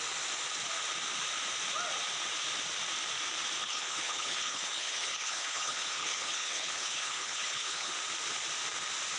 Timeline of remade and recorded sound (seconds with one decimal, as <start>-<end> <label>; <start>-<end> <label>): 0.0-3.6 recorded; 3.6-7.9 remade; 7.9-9.2 recorded